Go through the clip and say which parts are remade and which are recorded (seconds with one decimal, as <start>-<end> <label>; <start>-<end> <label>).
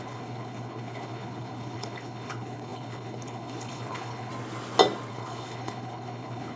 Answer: 0.0-4.3 remade; 4.3-5.1 recorded; 5.1-6.6 remade